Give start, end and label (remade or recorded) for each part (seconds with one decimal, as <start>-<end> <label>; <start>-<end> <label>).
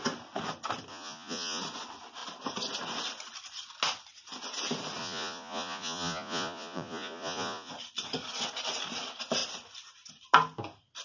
0.0-0.9 recorded; 0.9-1.6 remade; 1.6-5.0 recorded; 5.0-7.7 remade; 7.7-11.0 recorded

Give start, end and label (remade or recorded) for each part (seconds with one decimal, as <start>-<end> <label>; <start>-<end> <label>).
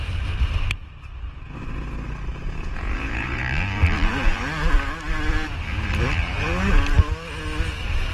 0.0-2.3 recorded; 2.3-3.4 remade; 3.4-8.1 recorded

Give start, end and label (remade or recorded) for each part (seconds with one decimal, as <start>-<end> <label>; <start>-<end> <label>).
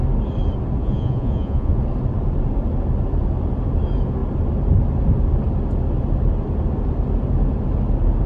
0.0-0.8 recorded; 0.8-1.8 remade; 1.8-8.3 recorded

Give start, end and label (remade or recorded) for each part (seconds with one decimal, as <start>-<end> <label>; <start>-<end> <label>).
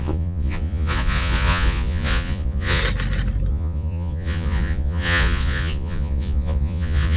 0.0-2.8 remade; 2.8-3.5 recorded; 3.5-7.2 remade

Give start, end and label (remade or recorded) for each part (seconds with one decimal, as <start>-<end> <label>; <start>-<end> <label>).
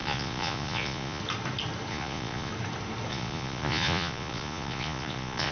0.0-1.2 remade; 1.2-1.9 recorded; 1.9-2.5 remade; 2.5-3.1 recorded; 3.1-5.5 remade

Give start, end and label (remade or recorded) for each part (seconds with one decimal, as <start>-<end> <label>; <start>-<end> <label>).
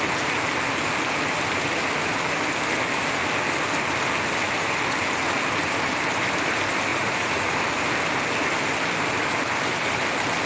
0.0-6.9 recorded; 6.9-7.5 remade; 7.5-10.5 recorded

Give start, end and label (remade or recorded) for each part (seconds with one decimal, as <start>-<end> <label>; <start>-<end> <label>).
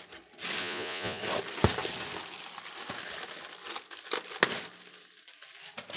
0.0-0.6 recorded; 0.6-1.2 remade; 1.2-6.0 recorded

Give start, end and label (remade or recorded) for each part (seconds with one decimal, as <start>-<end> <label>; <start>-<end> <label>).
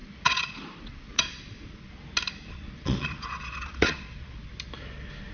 0.0-1.9 remade; 1.9-2.4 recorded; 2.4-4.5 remade; 4.5-5.3 recorded